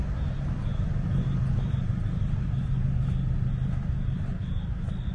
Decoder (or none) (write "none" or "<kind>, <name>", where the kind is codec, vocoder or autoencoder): none